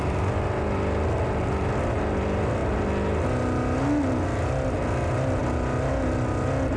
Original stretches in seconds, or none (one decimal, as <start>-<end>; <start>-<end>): 0.0-6.8